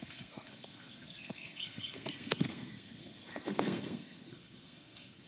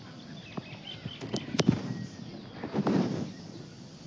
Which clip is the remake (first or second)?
first